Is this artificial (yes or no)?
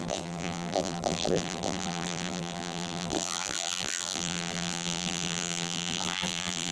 yes